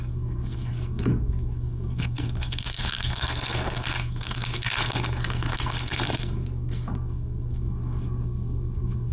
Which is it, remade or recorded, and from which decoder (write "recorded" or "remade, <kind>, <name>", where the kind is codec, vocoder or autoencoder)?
remade, codec, SNAC